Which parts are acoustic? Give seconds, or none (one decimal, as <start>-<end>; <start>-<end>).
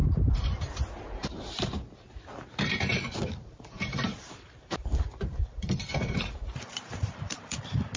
0.0-1.2; 1.7-3.2; 7.6-8.0